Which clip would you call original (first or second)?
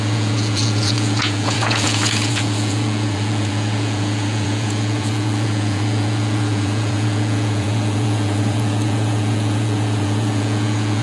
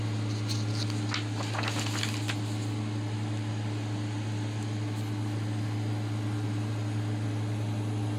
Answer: second